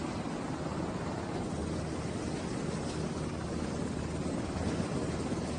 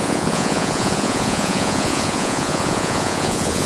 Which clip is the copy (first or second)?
second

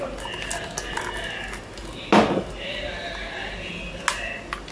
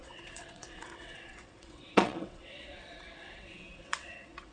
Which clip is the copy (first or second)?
second